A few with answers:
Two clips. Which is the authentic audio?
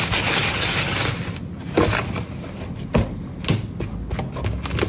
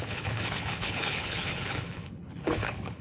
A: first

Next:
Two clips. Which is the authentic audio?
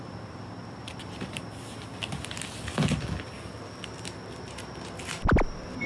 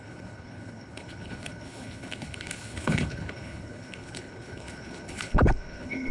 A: first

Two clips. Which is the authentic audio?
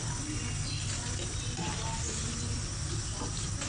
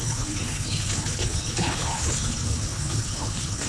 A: first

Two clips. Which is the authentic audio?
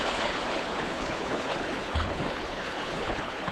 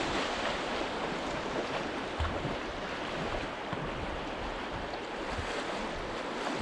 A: second